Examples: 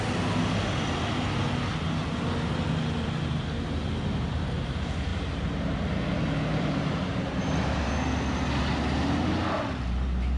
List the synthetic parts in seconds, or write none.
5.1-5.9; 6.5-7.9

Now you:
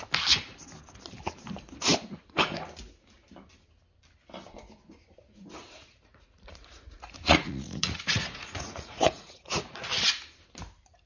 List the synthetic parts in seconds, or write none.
5.2-9.8

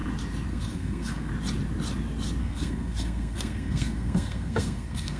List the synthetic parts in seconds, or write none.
0.5-1.3; 2.4-5.2